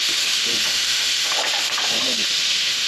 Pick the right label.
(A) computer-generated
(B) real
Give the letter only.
A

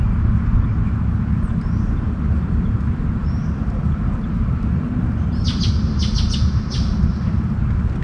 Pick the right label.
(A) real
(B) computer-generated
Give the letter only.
A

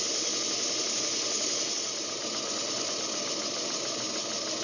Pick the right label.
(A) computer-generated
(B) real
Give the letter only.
B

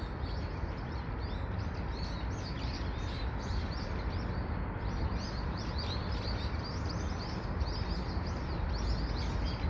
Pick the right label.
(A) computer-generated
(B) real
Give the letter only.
B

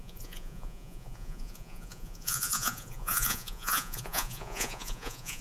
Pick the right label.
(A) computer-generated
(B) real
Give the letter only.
A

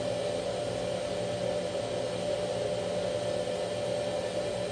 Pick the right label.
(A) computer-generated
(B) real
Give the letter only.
B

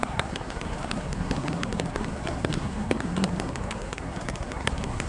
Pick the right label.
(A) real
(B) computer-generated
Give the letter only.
B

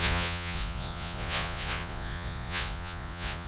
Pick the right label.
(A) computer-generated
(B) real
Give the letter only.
A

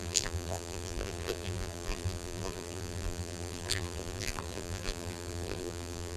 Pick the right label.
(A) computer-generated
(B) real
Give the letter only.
A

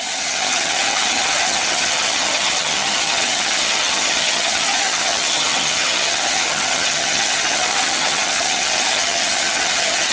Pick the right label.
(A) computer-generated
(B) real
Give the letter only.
A